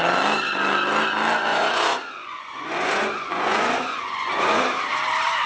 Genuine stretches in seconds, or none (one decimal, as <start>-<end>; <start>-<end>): 0.0-1.5; 4.6-5.5